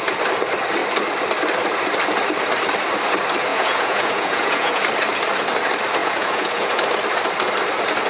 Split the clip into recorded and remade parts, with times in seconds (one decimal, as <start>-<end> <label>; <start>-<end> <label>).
0.0-3.5 recorded; 3.5-4.8 remade; 4.8-6.0 recorded; 6.0-6.8 remade; 6.8-8.1 recorded